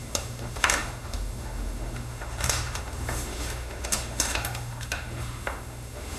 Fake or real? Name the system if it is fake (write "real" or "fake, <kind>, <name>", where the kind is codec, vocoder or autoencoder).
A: fake, autoencoder, DAC-VAE